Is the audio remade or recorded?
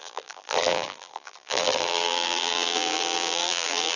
remade